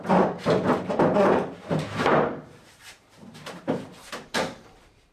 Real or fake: fake